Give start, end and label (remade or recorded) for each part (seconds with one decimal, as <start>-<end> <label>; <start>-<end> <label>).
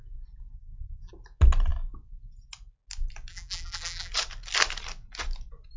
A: 0.0-0.5 recorded; 0.5-1.1 remade; 1.1-3.3 recorded; 3.3-4.1 remade; 4.1-5.8 recorded